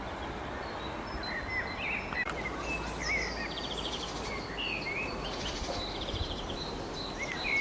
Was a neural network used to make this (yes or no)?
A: no